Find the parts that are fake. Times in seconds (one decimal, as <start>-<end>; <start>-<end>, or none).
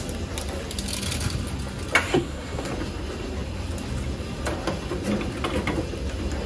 2.1-2.7